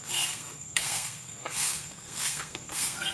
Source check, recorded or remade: remade